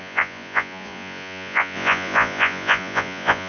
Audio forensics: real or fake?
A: fake